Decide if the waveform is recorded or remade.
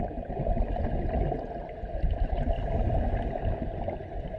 recorded